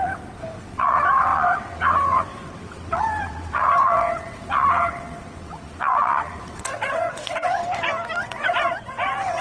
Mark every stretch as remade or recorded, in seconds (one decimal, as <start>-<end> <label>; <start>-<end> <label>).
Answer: 0.0-7.6 remade; 7.6-8.2 recorded; 8.2-9.4 remade